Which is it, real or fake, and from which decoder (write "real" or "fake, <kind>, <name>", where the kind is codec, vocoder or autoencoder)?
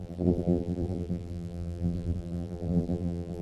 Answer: fake, vocoder, BigVGAN v2